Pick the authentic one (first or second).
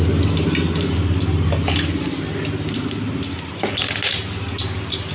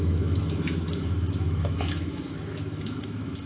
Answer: first